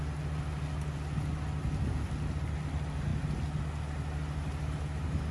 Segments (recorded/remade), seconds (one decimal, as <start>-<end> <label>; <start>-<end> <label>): 0.0-5.3 recorded